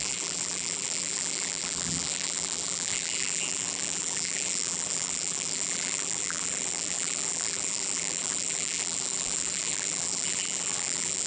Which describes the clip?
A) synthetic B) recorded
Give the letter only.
A